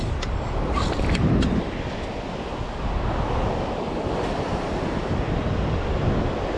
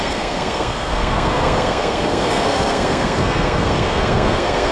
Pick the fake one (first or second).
second